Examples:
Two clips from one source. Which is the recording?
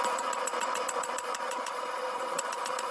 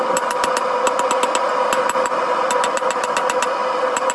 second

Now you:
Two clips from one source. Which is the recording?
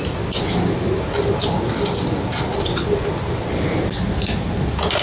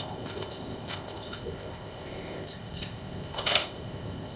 first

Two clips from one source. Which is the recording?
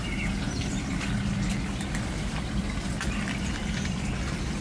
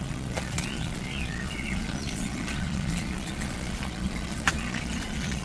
first